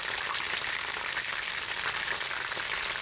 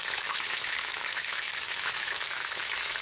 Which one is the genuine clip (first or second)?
first